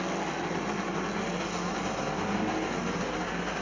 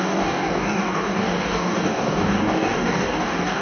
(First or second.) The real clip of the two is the first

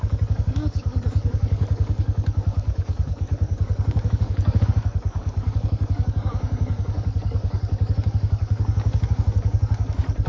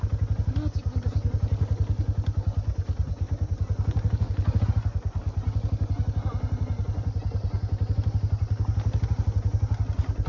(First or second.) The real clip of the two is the second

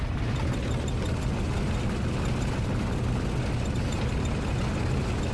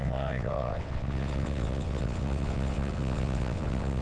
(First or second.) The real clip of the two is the first